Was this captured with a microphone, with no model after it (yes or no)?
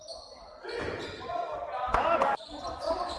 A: yes